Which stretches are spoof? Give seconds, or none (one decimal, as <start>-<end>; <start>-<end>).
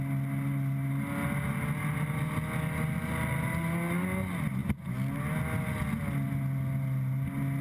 none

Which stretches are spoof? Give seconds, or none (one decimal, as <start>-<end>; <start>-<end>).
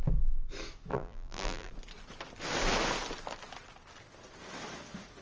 0.9-1.7